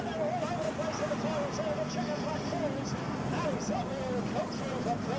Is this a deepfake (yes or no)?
no